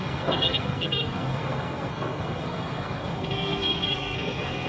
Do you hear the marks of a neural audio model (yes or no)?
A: yes